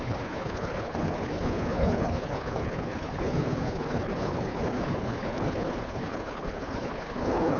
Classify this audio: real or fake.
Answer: fake